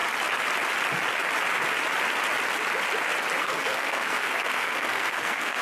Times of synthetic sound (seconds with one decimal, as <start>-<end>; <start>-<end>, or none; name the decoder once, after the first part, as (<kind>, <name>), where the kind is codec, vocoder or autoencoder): 3.4-5.6 (codec, SNAC)